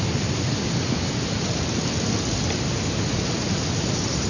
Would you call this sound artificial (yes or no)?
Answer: no